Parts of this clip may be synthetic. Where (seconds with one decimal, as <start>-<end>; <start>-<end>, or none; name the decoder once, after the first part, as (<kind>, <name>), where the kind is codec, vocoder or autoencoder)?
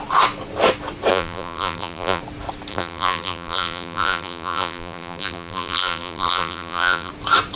1.1-2.2 (vocoder, BigVGAN v2); 2.7-7.1